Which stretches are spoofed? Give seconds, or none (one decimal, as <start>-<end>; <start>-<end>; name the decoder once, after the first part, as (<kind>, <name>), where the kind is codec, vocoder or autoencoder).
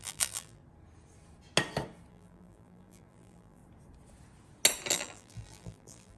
0.0-0.6 (vocoder, BigVGAN v2); 2.1-3.6; 4.9-6.2